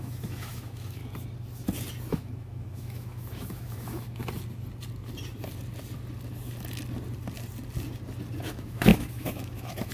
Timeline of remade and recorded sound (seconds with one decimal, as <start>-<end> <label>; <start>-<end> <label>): 0.0-1.0 remade; 1.0-2.1 recorded; 2.1-4.2 remade; 4.2-8.4 recorded; 8.4-9.9 remade